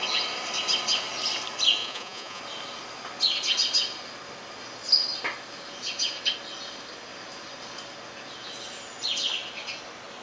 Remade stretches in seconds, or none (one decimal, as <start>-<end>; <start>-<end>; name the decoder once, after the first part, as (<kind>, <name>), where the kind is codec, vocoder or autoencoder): 1.8-2.4 (vocoder, Vocos)